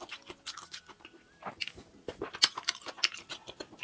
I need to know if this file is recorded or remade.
recorded